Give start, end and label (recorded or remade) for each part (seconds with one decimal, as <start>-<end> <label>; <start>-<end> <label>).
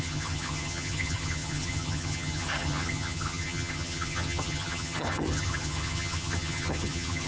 0.0-7.3 remade